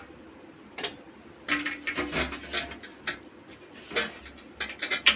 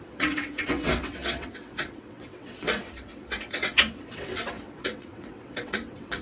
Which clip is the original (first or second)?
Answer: first